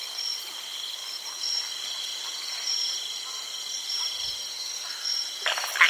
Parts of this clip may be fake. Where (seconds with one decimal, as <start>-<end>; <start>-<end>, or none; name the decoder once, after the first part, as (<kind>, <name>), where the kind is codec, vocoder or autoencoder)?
0.0-0.6 (vocoder, BigVGAN v2)